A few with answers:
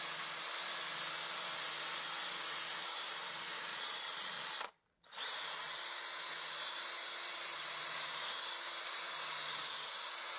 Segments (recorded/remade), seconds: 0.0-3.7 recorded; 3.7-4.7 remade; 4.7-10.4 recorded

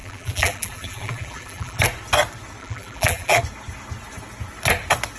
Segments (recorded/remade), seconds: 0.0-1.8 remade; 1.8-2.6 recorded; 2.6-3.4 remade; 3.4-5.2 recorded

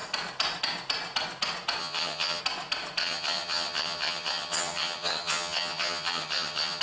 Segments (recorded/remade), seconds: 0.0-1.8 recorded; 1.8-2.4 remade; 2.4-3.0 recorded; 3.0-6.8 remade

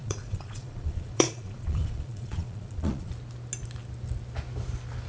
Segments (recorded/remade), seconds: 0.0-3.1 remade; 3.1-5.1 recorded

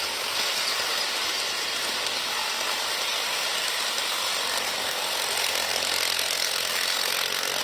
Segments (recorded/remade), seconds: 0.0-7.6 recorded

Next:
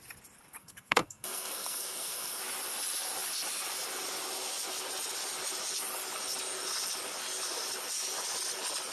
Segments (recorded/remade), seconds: 0.0-0.6 recorded; 0.6-2.4 remade; 2.4-8.9 recorded